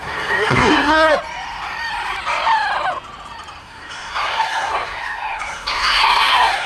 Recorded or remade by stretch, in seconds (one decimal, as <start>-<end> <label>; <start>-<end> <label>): 0.0-1.1 remade; 1.1-3.6 recorded; 3.6-6.7 remade